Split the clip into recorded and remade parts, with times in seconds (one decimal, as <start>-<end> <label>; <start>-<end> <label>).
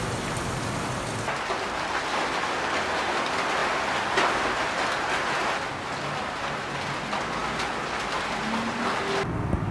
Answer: 0.0-9.7 recorded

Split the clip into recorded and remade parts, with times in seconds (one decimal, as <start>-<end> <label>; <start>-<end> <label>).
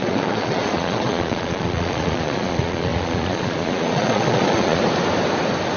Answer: 0.0-4.8 remade; 4.8-5.8 recorded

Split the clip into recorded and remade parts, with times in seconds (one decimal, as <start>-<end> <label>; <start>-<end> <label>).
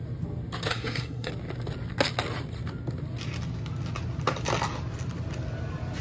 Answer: 0.0-0.7 recorded; 0.7-1.3 remade; 1.3-6.0 recorded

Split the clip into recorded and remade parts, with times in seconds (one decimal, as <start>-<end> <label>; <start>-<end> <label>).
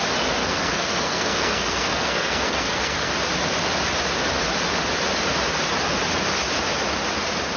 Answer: 0.0-0.4 recorded; 0.4-3.1 remade; 3.1-7.6 recorded